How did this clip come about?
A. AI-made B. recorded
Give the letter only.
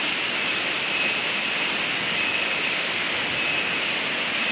B